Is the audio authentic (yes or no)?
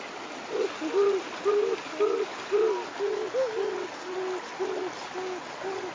yes